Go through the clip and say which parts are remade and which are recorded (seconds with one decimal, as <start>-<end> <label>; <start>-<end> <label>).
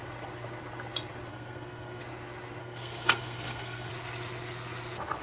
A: 0.0-1.3 recorded; 1.3-2.0 remade; 2.0-2.6 recorded; 2.6-3.9 remade; 3.9-5.2 recorded